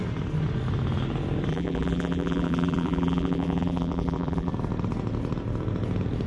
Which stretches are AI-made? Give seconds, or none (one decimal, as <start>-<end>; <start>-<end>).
1.5-4.5